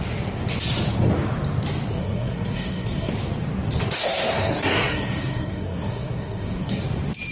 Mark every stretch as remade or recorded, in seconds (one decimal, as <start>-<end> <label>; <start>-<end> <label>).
0.0-1.9 recorded; 1.9-3.1 remade; 3.1-4.0 recorded; 4.0-6.8 remade; 6.8-7.3 recorded